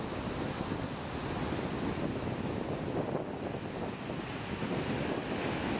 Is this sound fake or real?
real